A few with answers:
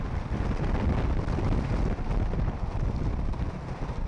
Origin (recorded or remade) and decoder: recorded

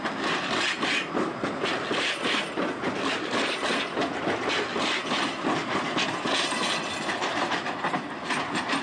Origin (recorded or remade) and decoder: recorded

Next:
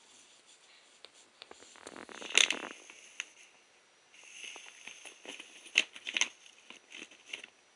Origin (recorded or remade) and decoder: recorded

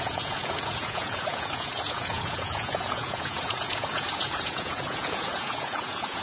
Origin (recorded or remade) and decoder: remade, vocoder, Vocos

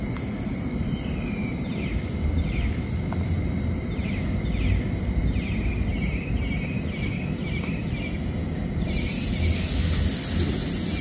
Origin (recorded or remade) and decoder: recorded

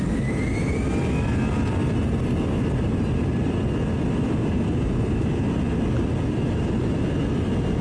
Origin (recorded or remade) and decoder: recorded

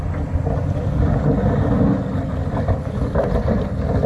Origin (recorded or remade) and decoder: recorded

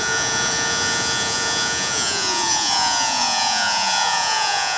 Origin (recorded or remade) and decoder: remade, vocoder, Vocos